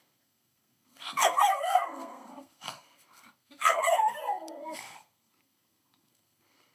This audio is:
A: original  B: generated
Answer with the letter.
B